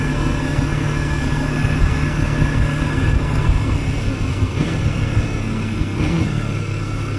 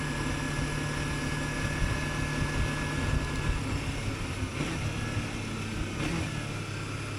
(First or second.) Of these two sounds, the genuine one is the second